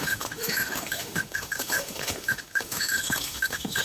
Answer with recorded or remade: remade